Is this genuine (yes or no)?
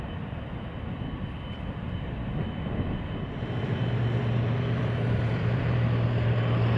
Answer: no